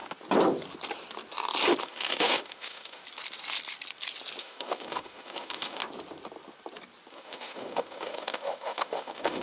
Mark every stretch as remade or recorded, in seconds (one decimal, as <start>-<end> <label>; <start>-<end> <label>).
0.0-1.8 recorded; 1.8-3.0 remade; 3.0-4.4 recorded; 4.4-5.8 remade; 5.8-7.1 recorded; 7.1-9.4 remade